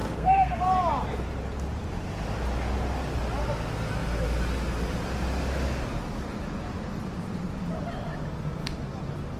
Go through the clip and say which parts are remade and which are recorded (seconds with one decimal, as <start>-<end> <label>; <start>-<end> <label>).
0.0-0.6 remade; 0.6-9.4 recorded